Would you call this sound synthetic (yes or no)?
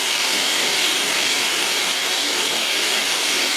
yes